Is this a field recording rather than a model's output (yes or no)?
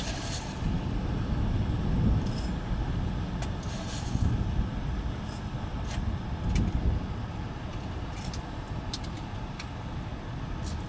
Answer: yes